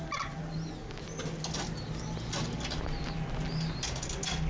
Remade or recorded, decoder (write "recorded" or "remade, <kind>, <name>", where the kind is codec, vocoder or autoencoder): recorded